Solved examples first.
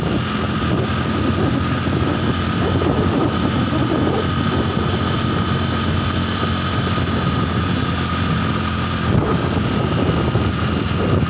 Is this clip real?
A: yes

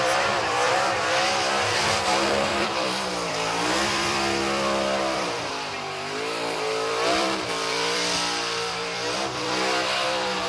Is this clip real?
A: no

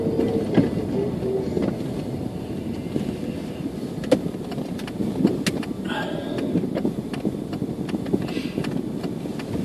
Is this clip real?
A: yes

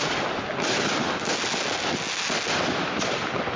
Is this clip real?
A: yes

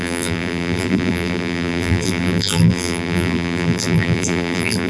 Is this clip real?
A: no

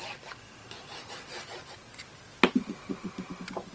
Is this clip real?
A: yes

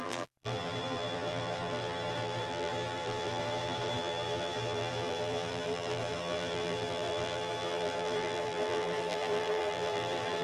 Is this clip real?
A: no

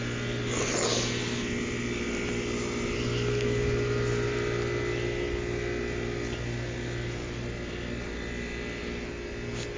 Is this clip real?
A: yes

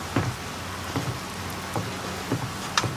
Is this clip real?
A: yes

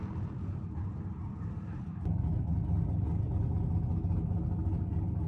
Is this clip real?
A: yes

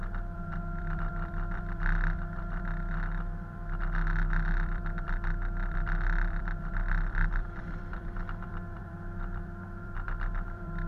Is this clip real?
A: no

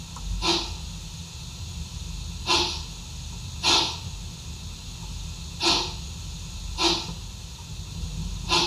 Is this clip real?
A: yes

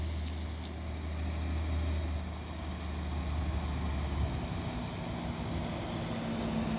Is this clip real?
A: yes